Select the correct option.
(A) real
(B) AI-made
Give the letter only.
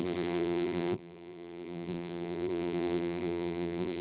B